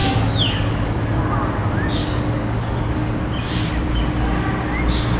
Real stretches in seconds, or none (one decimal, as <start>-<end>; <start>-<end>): 1.2-2.0; 3.2-5.2

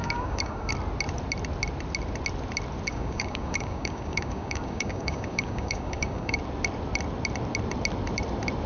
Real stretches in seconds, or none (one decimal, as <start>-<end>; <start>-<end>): 0.7-2.9; 6.4-8.7